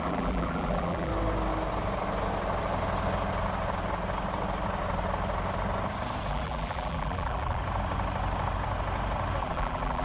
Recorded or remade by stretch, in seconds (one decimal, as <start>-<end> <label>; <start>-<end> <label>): 0.0-1.1 remade; 1.1-6.3 recorded; 6.3-7.6 remade; 7.6-9.4 recorded; 9.4-10.0 remade